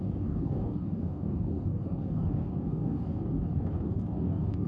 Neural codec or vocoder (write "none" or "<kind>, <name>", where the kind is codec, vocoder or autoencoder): codec, DAC